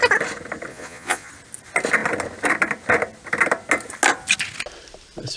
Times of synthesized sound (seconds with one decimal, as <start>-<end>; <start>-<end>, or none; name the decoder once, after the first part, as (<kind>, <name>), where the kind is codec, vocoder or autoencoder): 0.7-1.3 (vocoder, Vocos)